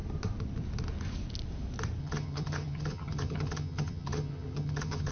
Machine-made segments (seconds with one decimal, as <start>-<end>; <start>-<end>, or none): 2.0-5.1